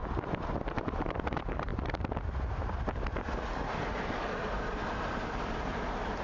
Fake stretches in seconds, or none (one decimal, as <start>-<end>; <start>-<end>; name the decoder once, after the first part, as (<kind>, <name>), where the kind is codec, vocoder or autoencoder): 0.9-1.7 (vocoder, BigVGAN v2); 4.4-6.2